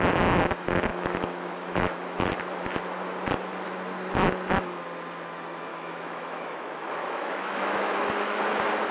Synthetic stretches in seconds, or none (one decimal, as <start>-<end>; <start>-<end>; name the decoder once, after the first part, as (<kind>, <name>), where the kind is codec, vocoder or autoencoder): 0.9-2.3 (autoencoder, DAC-VAE); 5.7-8.4